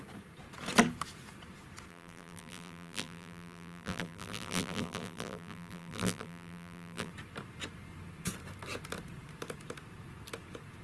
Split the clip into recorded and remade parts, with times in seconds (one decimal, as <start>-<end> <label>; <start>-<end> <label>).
0.0-1.9 recorded; 1.9-7.1 remade; 7.1-10.8 recorded